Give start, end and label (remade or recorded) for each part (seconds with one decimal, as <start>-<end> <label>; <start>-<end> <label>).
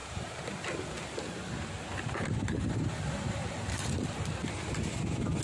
0.0-0.5 remade; 0.5-1.9 recorded; 1.9-2.7 remade; 2.7-3.4 recorded; 3.4-4.1 remade; 4.1-5.4 recorded